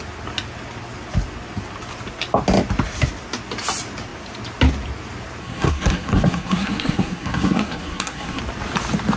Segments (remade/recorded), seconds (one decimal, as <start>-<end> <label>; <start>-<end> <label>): 0.0-5.4 recorded; 5.4-8.4 remade; 8.4-9.2 recorded